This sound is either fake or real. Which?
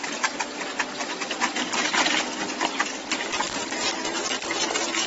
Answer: real